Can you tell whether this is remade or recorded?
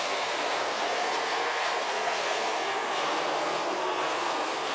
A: remade